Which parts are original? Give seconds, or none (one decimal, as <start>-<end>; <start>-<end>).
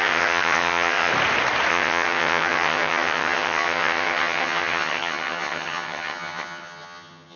1.1-1.7